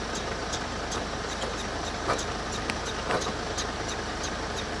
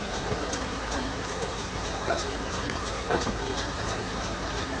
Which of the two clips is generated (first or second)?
second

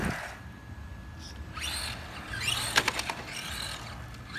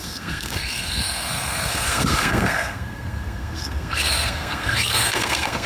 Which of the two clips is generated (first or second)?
second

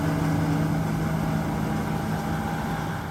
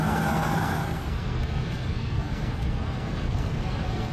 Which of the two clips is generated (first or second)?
second